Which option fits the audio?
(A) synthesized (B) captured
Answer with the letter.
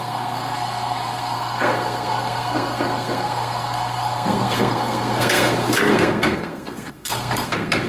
A